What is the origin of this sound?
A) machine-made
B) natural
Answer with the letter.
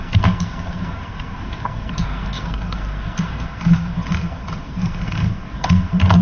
A